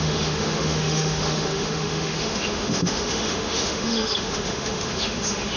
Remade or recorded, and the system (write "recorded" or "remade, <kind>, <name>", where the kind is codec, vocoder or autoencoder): remade, autoencoder, DAC-VAE